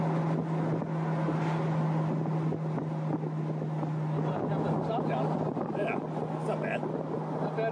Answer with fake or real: real